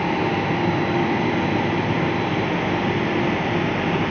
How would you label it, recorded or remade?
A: recorded